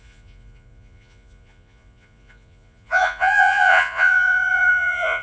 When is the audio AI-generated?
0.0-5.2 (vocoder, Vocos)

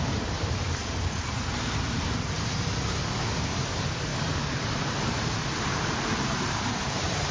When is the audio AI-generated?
0.0-4.1 (vocoder, BigVGAN v2); 5.0-5.4; 6.2-7.3

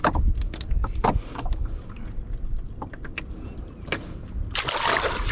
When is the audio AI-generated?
none

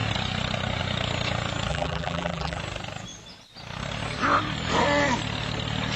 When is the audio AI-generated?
1.7-2.6 (vocoder, BigVGAN v2)

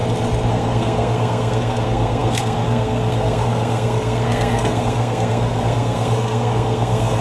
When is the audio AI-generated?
0.5-7.2 (codec, SNAC)

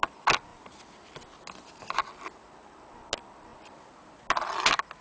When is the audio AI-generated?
none

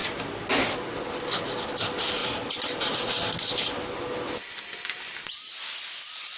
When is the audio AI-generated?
none